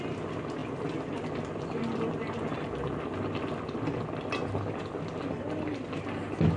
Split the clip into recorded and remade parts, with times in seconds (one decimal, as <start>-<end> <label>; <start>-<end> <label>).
0.0-6.6 recorded